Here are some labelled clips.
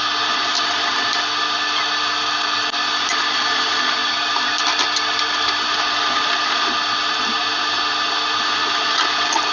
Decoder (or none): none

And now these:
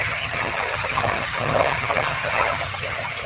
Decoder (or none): vocoder, HiFi-GAN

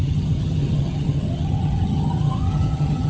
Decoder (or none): vocoder, HiFi-GAN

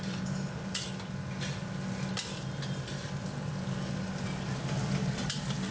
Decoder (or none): none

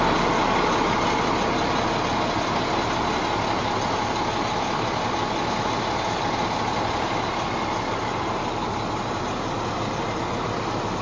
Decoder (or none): none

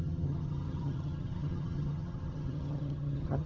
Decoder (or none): vocoder, HiFi-GAN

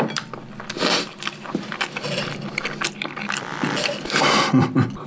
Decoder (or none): none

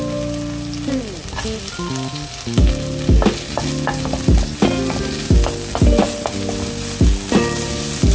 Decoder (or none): none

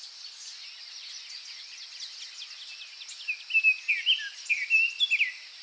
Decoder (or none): none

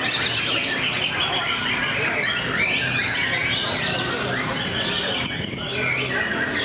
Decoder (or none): none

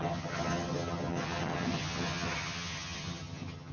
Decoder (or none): vocoder, HiFi-GAN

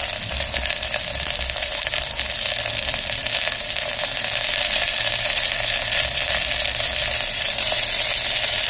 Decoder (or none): none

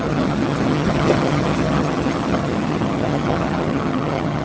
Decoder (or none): vocoder, HiFi-GAN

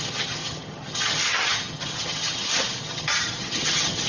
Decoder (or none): vocoder, HiFi-GAN